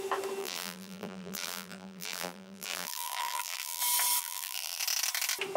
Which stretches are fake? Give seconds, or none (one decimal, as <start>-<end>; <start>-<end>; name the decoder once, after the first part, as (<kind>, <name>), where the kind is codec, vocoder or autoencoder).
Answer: 0.4-3.8 (vocoder, BigVGAN v2); 4.2-4.8